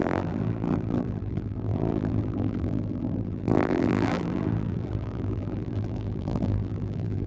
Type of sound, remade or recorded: remade